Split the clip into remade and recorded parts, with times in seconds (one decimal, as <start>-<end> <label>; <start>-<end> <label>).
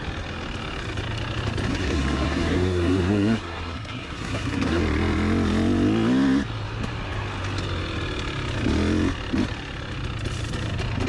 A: 0.0-1.7 recorded; 1.7-4.8 remade; 4.8-11.1 recorded